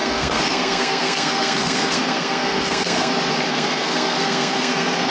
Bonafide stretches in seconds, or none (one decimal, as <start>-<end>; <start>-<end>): 3.1-3.5

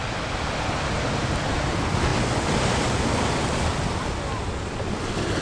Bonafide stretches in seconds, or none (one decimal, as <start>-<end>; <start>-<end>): 0.0-5.4

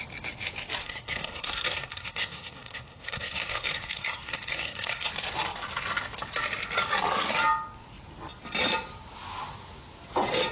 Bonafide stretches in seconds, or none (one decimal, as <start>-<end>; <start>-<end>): 0.0-0.8; 5.1-10.5

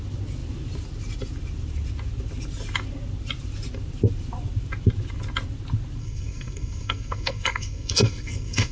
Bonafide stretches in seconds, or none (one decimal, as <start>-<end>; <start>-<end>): 0.0-6.0

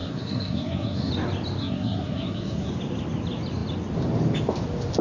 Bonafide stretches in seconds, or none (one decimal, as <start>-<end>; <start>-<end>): 1.1-1.6; 2.7-5.0